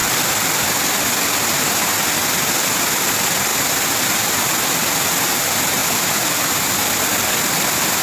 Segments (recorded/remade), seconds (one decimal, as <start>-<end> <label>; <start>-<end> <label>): 0.0-1.0 remade; 1.0-5.8 recorded; 5.8-7.0 remade; 7.0-8.0 recorded